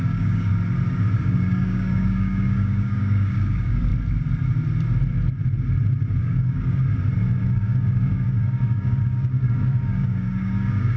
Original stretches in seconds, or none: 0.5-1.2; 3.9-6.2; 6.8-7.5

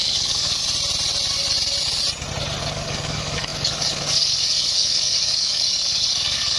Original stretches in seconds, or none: 0.6-2.6